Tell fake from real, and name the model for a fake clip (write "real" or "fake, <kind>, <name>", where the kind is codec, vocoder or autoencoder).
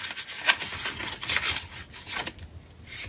real